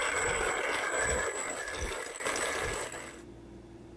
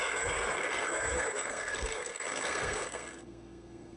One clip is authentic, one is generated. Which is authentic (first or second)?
first